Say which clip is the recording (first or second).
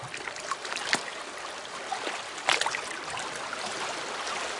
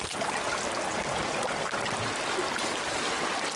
second